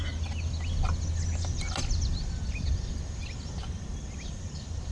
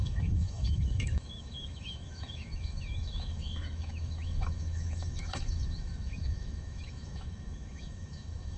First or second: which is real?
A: first